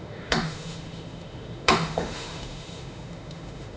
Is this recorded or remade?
remade